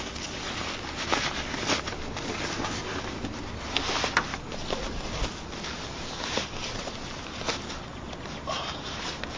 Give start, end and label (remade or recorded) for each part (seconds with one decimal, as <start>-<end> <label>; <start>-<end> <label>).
0.0-9.4 recorded